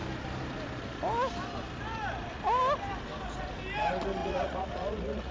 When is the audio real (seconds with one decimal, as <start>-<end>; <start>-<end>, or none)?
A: 0.0-4.2